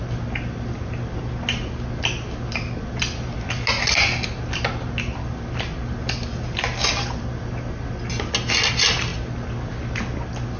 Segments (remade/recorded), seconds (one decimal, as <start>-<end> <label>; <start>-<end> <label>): 0.0-10.6 recorded